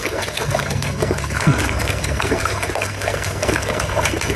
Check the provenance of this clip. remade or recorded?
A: remade